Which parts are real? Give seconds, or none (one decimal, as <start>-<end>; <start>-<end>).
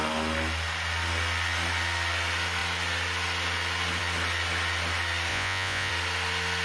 0.0-5.3; 5.9-6.6